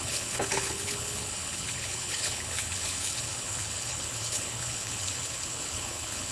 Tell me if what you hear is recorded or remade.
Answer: remade